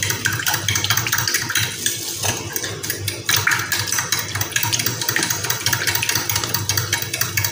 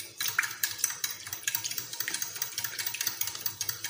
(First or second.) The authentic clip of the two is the first